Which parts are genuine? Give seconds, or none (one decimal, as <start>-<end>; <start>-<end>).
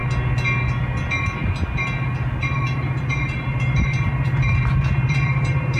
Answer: 0.0-2.4